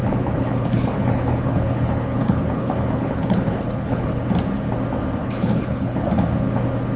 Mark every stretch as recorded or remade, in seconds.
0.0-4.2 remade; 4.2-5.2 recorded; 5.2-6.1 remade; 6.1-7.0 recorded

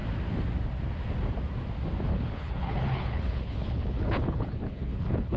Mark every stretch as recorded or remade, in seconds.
0.0-2.1 recorded; 2.1-5.4 remade

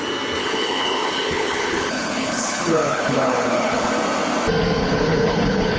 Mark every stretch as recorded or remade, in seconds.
0.0-0.4 recorded; 0.4-3.9 remade; 3.9-4.8 recorded; 4.8-5.8 remade